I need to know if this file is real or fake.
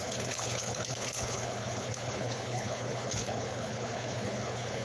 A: fake